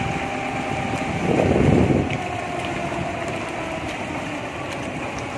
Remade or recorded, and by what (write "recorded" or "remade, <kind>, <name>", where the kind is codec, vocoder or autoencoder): recorded